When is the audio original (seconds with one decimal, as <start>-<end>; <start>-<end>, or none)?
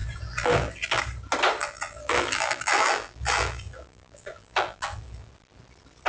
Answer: 1.0-1.6; 5.3-6.1